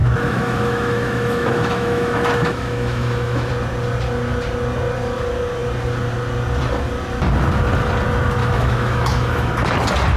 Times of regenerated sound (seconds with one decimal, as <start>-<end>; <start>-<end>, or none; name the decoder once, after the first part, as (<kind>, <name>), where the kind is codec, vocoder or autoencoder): 0.0-3.5 (autoencoder, DAC-VAE); 8.4-9.5